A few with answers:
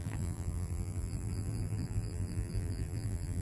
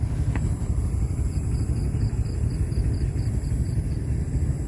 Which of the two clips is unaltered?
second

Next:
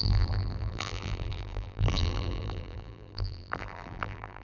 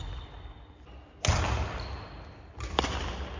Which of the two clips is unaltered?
second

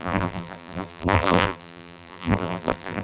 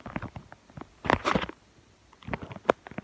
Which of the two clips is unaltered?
second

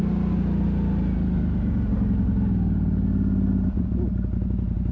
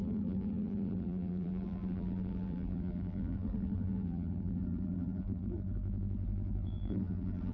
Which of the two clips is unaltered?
first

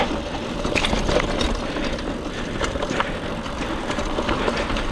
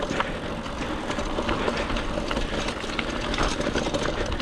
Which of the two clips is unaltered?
second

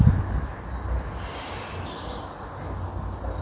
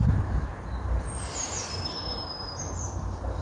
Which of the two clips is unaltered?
first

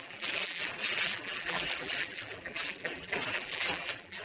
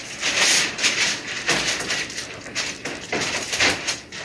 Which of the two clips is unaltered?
second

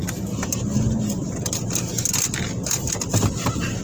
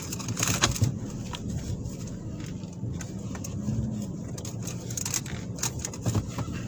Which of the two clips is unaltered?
first